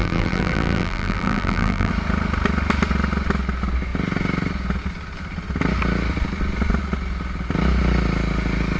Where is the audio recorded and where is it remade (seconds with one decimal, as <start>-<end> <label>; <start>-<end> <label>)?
0.0-1.9 remade; 1.9-8.8 recorded